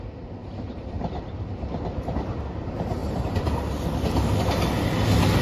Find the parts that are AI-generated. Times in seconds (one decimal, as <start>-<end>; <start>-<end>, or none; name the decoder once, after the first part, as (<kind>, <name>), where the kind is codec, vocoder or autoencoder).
0.4-1.3 (vocoder, BigVGAN v2); 3.0-3.8